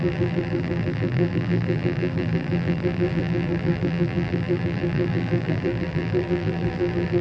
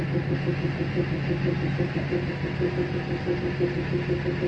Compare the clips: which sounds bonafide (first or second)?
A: second